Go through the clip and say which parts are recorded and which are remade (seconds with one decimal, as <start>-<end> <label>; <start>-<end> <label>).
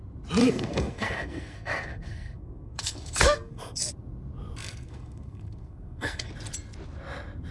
0.0-0.4 recorded; 0.4-3.9 remade; 3.9-4.6 recorded; 4.6-6.3 remade; 6.3-7.5 recorded